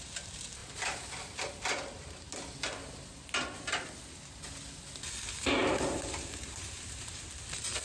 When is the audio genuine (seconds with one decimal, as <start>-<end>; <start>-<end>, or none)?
0.0-5.6; 7.3-7.8